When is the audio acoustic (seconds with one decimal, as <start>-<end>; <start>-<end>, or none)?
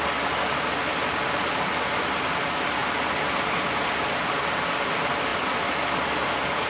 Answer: 0.0-6.7